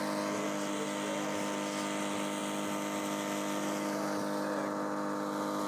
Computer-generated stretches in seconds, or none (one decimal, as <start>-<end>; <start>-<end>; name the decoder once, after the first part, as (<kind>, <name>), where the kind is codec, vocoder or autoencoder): none